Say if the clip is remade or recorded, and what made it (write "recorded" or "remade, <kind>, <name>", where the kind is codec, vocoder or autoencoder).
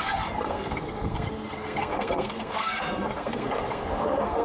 remade, codec, SNAC